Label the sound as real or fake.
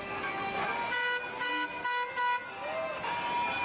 real